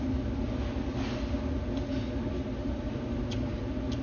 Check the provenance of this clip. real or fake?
real